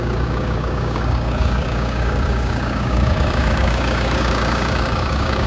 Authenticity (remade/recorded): remade